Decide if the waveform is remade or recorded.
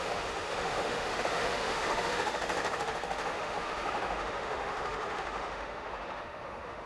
remade